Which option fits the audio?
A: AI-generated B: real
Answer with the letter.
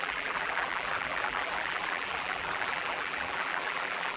A